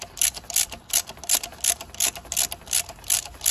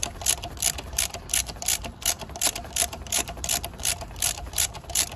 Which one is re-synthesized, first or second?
second